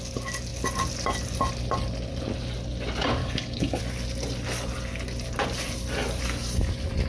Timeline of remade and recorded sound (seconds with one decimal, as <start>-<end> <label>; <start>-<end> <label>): 0.0-3.2 recorded; 3.2-3.8 remade; 3.8-7.1 recorded